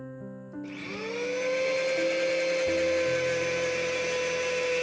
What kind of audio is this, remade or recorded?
recorded